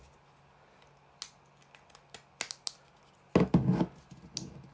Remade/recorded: recorded